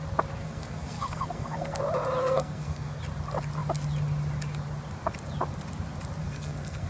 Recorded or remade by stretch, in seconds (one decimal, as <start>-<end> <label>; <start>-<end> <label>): 0.0-0.4 recorded; 0.4-1.8 remade; 1.8-2.2 recorded; 2.2-3.0 remade; 3.0-6.2 recorded; 6.2-6.9 remade